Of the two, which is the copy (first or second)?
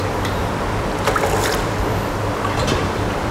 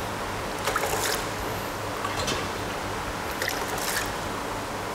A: first